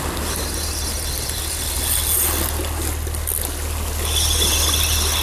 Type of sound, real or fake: real